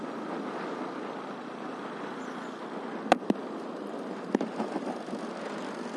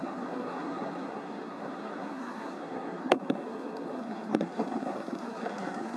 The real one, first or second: first